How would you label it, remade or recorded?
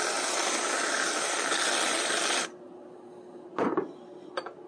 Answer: recorded